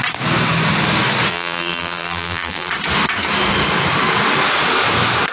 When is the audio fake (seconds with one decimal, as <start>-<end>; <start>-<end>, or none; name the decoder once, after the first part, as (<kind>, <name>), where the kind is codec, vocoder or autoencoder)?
1.3-2.7 (vocoder, BigVGAN v2)